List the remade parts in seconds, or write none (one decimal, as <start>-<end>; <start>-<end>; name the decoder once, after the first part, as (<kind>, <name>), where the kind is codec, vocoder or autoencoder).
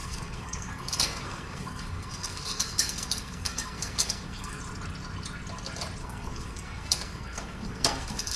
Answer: 0.0-4.6 (codec, SNAC); 6.0-8.4